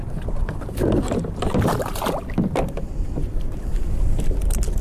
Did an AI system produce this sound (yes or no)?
yes